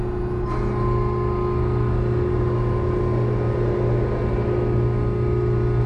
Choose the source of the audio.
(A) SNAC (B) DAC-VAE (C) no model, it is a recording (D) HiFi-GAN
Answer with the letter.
C